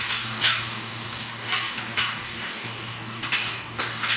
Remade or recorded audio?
remade